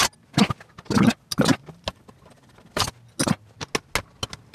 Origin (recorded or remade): recorded